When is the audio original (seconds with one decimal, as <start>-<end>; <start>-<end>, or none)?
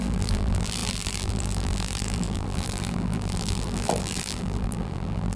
none